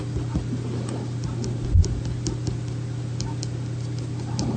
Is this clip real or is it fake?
real